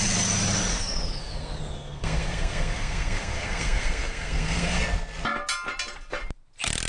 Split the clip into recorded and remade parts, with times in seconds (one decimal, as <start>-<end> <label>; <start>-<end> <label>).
0.0-0.7 recorded; 0.7-4.8 remade; 4.8-6.9 recorded